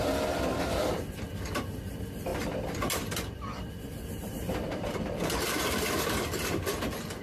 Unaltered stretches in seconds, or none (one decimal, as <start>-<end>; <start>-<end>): none